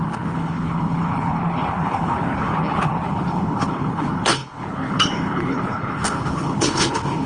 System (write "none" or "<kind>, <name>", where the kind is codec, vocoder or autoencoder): codec, HILCodec